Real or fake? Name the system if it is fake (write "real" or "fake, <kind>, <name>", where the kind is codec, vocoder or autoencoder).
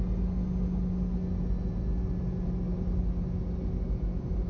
real